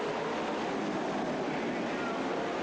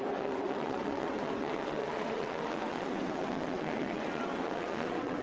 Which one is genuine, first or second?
first